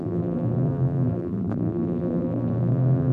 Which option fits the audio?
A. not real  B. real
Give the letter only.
A